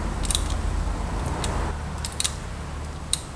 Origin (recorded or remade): recorded